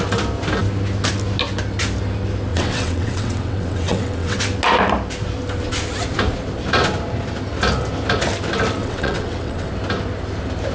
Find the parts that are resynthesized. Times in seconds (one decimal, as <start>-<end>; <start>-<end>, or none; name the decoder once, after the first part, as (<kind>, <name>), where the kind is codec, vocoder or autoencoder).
2.5-4.4 (vocoder, WaveNeXt); 8.8-9.7

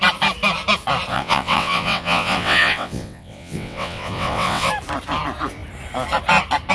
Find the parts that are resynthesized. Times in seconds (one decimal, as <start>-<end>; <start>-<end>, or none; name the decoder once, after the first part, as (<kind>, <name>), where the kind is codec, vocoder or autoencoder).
1.1-4.7 (vocoder, WaveNeXt)

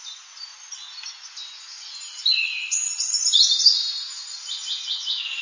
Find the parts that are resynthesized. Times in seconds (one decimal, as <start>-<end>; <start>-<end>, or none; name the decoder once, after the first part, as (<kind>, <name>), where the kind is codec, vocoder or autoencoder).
none

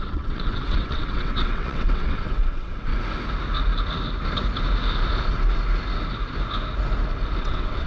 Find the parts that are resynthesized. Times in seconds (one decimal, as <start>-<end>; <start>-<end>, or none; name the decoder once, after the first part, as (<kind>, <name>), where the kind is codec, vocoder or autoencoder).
0.0-2.9 (vocoder, WaveNeXt); 7.4-7.9

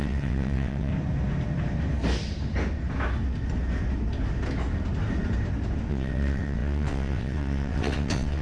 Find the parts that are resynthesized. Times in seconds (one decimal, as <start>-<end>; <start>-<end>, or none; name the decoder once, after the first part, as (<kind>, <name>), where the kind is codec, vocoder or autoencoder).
0.0-0.9 (vocoder, WaveNeXt); 5.9-8.4

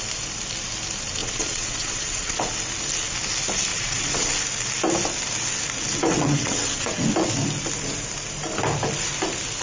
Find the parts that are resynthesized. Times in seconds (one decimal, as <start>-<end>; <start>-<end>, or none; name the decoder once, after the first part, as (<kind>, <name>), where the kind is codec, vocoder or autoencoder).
1.2-2.5 (vocoder, WaveNeXt); 3.7-4.3; 6.1-7.1

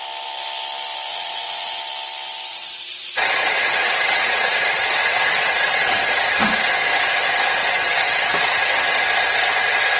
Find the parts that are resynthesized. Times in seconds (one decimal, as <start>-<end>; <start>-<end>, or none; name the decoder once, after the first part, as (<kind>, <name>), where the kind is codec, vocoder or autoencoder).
1.1-1.8 (vocoder, WaveNeXt); 2.5-6.2; 7.6-8.3